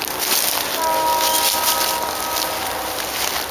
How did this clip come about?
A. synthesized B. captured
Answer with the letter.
B